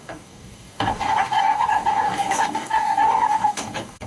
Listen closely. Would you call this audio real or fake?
fake